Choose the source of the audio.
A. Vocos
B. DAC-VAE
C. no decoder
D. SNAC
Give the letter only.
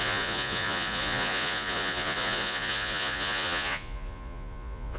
A